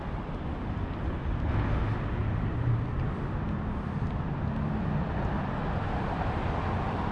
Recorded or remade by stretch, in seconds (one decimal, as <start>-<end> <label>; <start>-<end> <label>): 0.0-2.2 recorded; 2.2-2.8 remade; 2.8-7.1 recorded